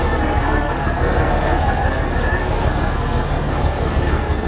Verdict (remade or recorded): remade